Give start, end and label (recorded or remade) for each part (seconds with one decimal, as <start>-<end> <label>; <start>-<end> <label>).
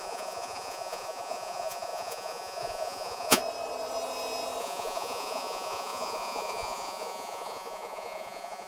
0.0-3.4 remade; 3.4-4.6 recorded; 4.6-8.7 remade